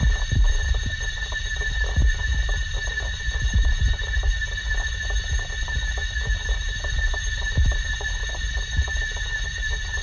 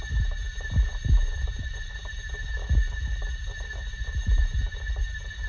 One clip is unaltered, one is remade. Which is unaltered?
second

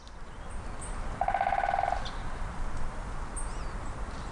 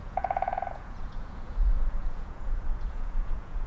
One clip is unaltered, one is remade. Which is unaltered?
first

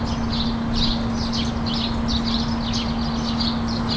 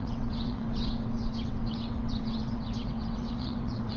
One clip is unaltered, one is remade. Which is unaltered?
first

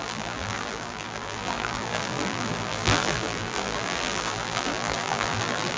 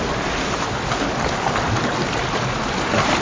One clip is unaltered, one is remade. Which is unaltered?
second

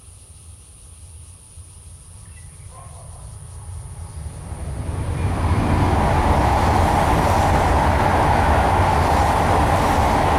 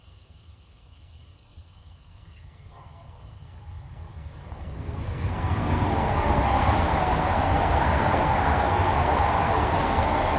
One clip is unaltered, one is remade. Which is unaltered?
first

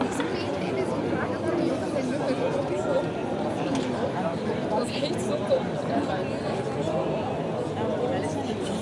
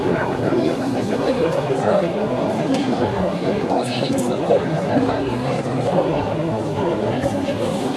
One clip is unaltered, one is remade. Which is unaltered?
first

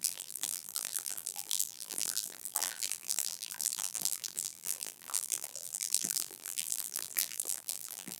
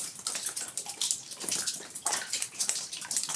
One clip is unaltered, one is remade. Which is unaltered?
second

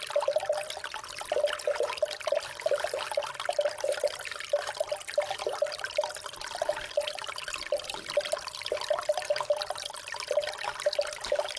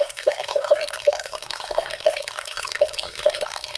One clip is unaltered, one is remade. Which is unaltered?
first